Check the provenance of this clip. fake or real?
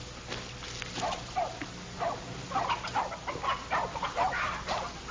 real